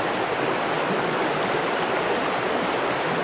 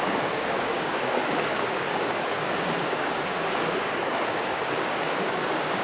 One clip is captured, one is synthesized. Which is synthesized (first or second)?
second